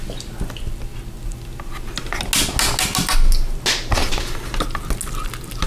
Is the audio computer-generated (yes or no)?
no